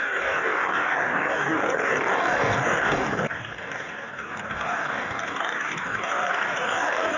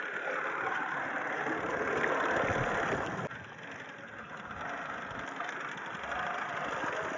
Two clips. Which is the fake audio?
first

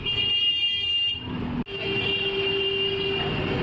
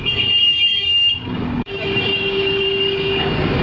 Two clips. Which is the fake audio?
second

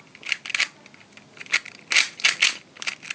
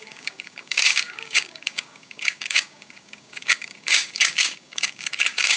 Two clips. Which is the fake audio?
second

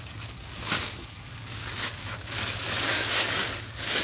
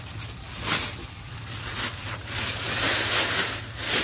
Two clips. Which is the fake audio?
first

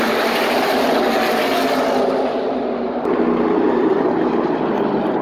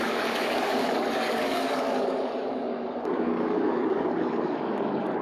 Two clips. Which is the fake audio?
second